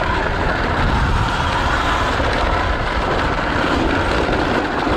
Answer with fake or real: real